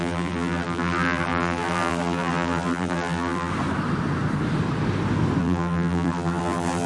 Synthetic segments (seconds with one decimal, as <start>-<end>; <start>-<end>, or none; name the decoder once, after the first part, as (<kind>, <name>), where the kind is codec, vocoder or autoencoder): 0.0-3.5 (vocoder, BigVGAN v2); 5.4-6.9